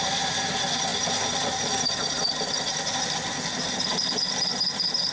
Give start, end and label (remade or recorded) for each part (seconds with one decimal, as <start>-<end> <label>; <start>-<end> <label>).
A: 0.0-5.1 recorded